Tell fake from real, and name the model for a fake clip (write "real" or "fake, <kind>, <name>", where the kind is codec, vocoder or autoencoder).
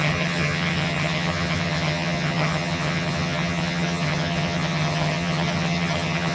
fake, vocoder, HiFi-GAN